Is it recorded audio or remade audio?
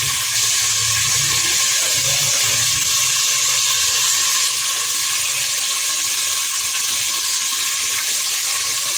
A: recorded